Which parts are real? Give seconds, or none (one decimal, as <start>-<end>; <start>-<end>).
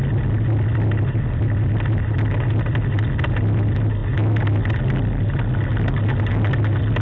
0.0-7.0